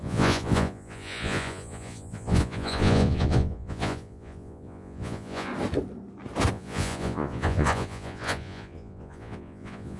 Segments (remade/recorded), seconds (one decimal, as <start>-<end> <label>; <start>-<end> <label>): 0.0-5.5 remade; 5.5-6.5 recorded; 6.5-10.0 remade